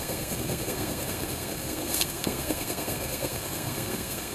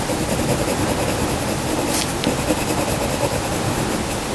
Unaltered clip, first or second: second